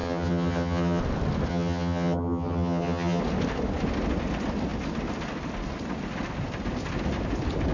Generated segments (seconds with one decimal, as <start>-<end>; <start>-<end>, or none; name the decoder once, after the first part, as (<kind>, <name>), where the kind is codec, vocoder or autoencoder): 0.0-1.0 (vocoder, HiFi-GAN); 1.5-3.2